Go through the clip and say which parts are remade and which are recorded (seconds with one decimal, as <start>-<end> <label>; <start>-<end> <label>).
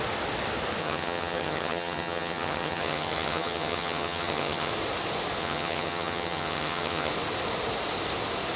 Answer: 0.0-0.8 recorded; 0.8-4.7 remade; 4.7-5.4 recorded; 5.4-7.1 remade; 7.1-8.6 recorded